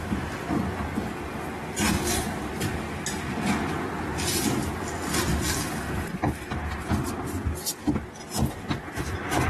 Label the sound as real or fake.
real